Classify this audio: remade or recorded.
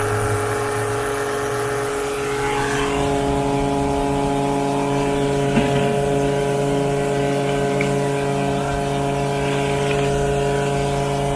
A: recorded